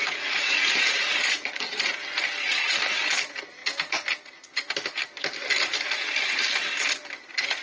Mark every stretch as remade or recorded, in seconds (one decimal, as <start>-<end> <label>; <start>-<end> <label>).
0.0-1.9 remade; 1.9-7.6 recorded